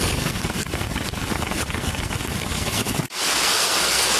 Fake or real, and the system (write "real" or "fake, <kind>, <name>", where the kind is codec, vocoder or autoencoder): fake, codec, SNAC